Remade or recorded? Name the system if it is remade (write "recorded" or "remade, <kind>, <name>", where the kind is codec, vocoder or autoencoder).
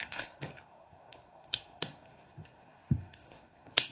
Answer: remade, codec, SNAC